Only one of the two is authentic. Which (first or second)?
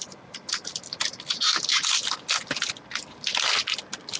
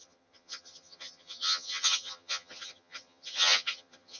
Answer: first